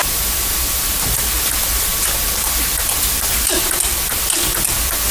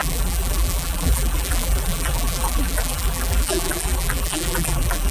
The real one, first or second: first